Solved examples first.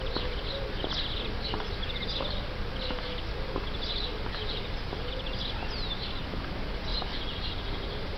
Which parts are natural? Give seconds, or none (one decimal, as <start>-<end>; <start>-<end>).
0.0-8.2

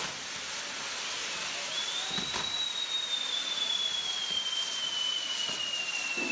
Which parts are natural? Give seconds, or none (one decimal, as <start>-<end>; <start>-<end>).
0.0-6.3

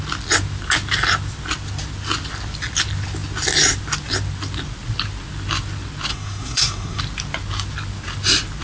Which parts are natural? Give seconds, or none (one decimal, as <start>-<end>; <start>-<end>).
0.0-6.1; 7.0-8.6

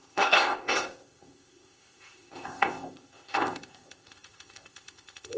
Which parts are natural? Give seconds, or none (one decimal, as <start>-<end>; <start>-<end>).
none